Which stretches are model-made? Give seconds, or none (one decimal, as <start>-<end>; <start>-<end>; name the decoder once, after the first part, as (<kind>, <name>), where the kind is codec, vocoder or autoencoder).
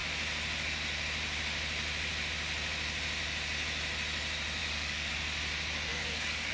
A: 4.6-5.1 (codec, DAC); 5.9-6.5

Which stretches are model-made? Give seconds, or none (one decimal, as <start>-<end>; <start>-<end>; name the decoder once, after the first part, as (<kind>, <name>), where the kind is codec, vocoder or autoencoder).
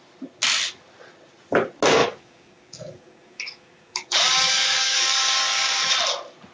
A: 2.0-5.9 (codec, DAC)